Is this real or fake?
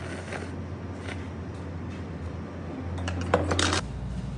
real